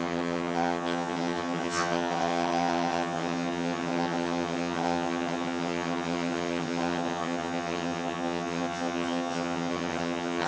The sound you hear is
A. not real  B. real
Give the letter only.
A